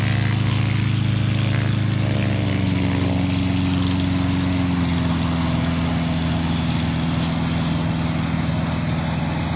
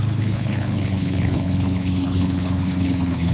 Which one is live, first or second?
first